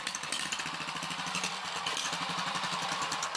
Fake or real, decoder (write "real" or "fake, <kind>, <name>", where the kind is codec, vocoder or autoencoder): fake, vocoder, BigVGAN v2